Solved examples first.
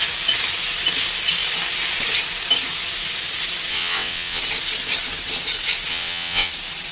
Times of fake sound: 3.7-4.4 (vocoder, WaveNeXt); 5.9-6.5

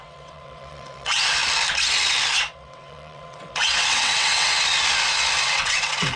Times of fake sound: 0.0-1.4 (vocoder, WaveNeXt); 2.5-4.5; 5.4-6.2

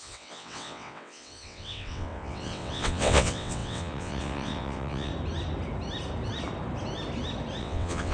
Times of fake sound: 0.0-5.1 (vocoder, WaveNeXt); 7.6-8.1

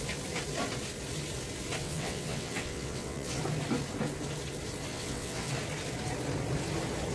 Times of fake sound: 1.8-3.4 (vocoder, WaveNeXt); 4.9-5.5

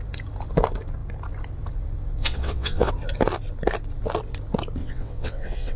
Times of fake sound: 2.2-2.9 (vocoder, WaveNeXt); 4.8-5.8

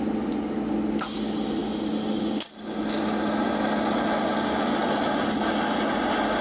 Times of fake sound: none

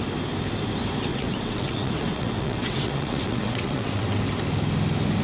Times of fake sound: 1.1-4.2 (vocoder, WaveNeXt)